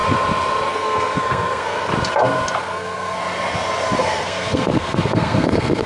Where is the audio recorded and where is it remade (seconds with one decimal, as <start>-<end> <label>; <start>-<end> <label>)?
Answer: 0.0-0.7 recorded; 0.7-1.9 remade; 1.9-2.6 recorded; 2.6-3.2 remade; 3.2-4.0 recorded; 4.0-5.9 remade